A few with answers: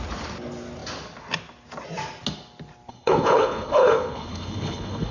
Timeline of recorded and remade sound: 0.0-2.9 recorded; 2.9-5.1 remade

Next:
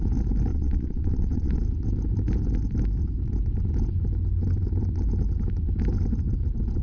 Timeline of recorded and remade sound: 0.0-0.5 recorded; 0.5-1.6 remade; 1.6-6.8 recorded

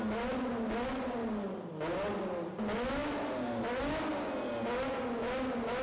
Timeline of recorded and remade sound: 0.0-5.8 recorded